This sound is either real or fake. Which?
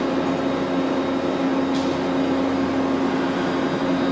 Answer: real